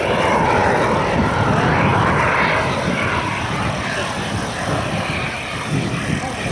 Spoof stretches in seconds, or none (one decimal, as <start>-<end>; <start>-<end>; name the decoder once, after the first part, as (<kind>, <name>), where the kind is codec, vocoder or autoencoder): 0.0-6.5 (vocoder, BigVGAN v2)